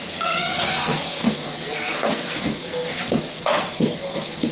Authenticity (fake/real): fake